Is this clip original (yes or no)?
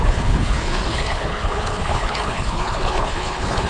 no